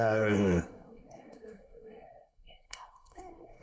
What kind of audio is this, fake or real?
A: fake